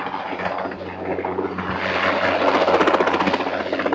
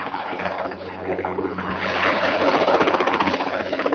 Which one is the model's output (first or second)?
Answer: second